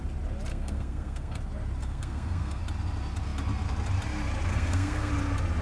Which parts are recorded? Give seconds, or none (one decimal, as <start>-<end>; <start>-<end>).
0.0-0.5; 1.4-1.8; 2.6-4.5; 5.1-5.6